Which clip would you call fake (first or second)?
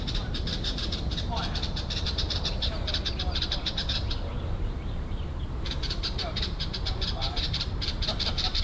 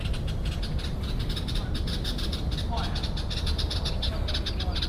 first